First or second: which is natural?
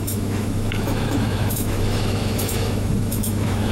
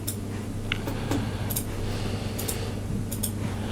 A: second